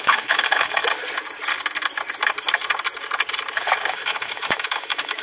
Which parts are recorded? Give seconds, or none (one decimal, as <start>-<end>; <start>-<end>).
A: 0.8-3.9